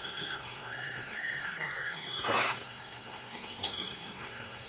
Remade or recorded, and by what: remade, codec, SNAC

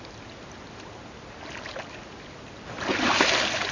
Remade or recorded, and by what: recorded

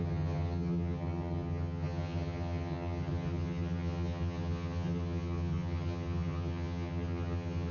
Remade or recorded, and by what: remade, vocoder, HiFi-GAN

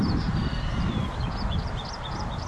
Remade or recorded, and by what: recorded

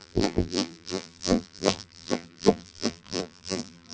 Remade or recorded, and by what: remade, vocoder, BigVGAN v2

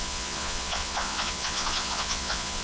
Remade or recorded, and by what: remade, vocoder, Vocos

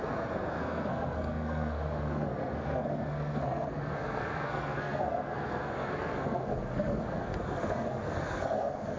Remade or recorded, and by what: remade, codec, SNAC